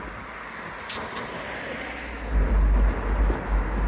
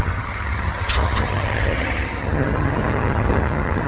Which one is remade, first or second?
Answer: second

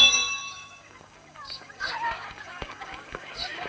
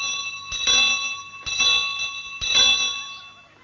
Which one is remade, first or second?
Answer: first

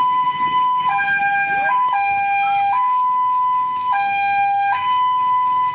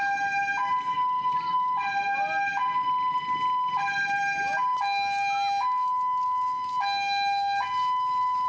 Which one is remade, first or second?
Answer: first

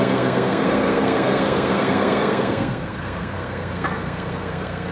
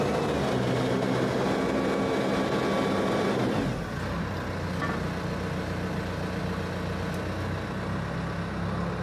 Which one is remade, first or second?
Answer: first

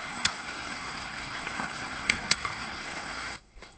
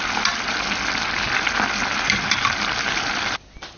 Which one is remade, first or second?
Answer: first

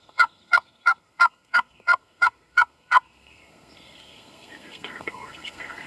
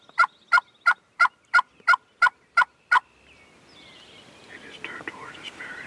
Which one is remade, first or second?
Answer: first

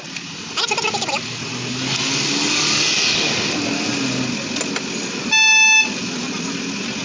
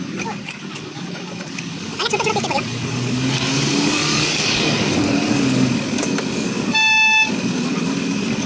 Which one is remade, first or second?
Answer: second